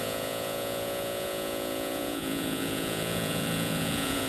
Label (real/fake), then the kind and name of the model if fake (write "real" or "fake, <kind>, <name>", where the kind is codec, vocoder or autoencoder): fake, vocoder, Vocos